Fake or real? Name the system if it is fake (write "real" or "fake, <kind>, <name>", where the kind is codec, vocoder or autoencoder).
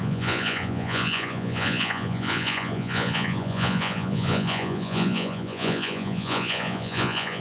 fake, vocoder, Vocos